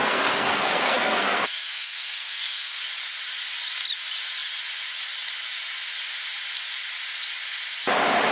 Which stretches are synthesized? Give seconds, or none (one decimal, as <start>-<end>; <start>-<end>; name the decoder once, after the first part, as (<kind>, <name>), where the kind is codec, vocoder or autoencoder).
0.0-2.8 (codec, SNAC)